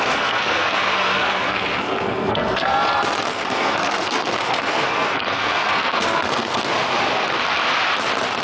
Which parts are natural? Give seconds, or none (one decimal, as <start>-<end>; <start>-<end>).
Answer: 2.7-3.3; 6.6-8.4